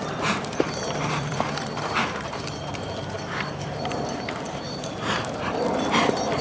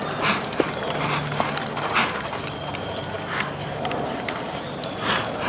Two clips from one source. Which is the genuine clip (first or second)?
second